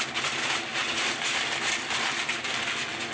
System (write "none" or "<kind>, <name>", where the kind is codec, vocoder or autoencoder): none